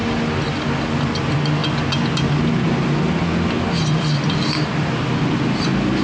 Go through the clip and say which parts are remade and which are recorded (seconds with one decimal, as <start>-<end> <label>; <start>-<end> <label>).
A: 0.0-6.0 recorded

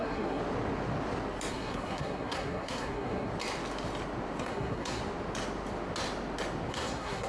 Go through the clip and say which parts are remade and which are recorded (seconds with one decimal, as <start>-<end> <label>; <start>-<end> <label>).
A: 0.0-0.4 remade; 0.4-1.5 recorded; 1.5-3.3 remade; 3.3-4.4 recorded; 4.4-5.0 remade; 5.0-6.7 recorded; 6.7-7.3 remade

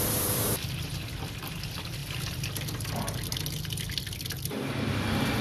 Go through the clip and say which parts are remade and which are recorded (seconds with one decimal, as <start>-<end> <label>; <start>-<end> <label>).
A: 0.0-5.4 recorded

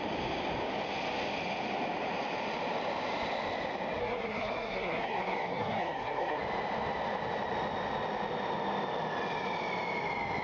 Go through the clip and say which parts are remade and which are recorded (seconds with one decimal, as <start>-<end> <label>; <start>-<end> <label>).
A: 0.0-4.0 recorded; 4.0-6.4 remade; 6.4-10.4 recorded